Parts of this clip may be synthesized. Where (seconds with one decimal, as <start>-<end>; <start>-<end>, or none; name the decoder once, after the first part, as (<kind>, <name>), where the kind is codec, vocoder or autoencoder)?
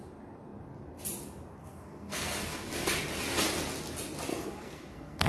1.6-2.7 (codec, SNAC); 4.3-5.3